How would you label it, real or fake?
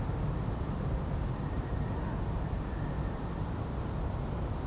real